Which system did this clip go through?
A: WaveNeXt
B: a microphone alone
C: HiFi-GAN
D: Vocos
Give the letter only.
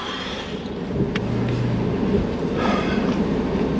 B